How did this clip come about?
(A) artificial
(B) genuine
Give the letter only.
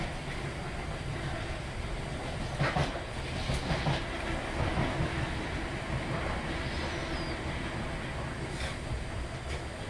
B